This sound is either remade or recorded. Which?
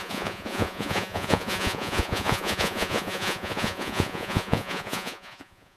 remade